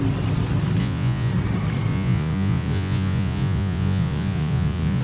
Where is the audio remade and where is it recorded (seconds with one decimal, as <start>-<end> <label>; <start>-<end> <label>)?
0.0-0.8 recorded; 0.8-1.3 remade; 1.3-1.9 recorded; 1.9-5.0 remade